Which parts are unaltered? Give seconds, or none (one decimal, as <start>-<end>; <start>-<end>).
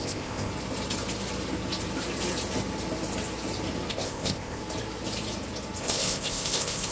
0.5-3.9; 4.6-5.8